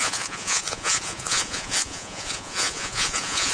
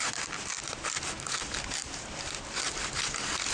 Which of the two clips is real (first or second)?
second